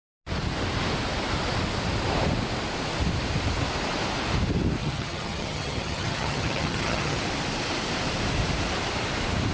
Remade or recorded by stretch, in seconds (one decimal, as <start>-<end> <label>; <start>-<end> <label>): 0.0-4.8 recorded; 4.8-7.2 remade; 7.2-9.5 recorded